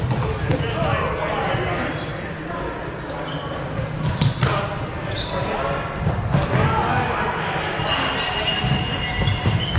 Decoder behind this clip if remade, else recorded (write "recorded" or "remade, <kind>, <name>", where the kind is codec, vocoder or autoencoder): recorded